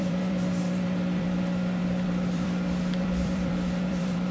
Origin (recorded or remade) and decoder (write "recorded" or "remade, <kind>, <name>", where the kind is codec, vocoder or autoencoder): remade, vocoder, BigVGAN v2